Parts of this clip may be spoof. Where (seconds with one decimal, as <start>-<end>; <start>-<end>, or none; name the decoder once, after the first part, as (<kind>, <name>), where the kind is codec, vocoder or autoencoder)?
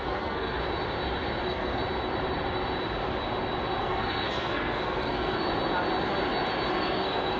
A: 0.0-0.6 (codec, SNAC); 1.4-1.8; 3.8-5.4; 6.7-7.4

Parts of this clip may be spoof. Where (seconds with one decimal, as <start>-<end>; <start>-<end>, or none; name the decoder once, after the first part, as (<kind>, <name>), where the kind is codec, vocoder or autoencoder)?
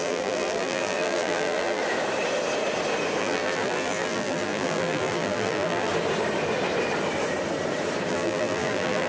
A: 0.0-1.8 (vocoder, BigVGAN v2); 3.2-5.9; 8.1-9.1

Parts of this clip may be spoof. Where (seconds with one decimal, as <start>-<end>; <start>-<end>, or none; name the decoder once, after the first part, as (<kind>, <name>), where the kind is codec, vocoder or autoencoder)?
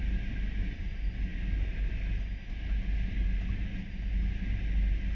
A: none